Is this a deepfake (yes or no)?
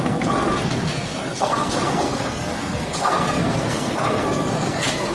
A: yes